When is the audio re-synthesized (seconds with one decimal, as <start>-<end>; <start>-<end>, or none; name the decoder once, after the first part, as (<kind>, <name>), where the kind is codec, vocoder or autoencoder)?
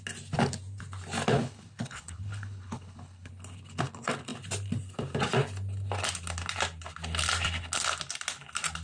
1.3-3.3 (codec, HILCodec)